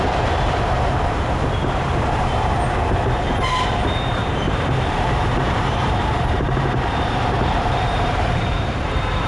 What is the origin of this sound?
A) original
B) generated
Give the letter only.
B